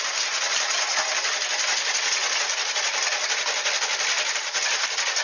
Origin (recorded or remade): recorded